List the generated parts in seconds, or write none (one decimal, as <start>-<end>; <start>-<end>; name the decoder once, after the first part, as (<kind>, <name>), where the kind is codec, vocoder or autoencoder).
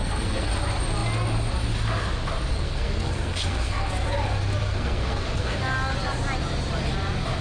0.0-0.5 (codec, SNAC); 2.5-3.9; 4.6-5.6